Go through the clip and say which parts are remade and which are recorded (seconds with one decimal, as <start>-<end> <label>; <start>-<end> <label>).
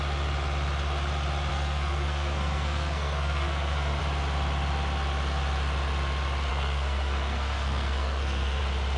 0.0-1.5 recorded; 1.5-4.0 remade; 4.0-6.5 recorded; 6.5-8.6 remade; 8.6-9.0 recorded